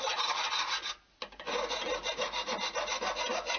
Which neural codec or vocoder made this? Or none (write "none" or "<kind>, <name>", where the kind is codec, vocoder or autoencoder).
none